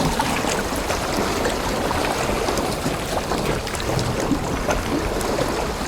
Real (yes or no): yes